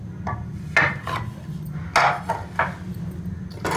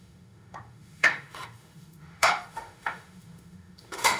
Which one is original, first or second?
first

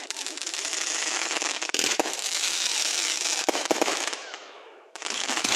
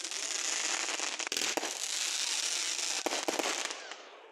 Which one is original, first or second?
second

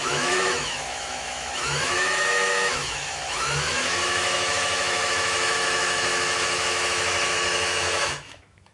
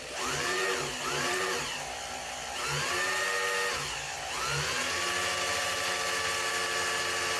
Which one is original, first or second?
second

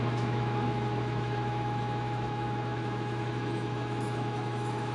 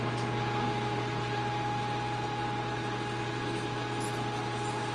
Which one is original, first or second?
second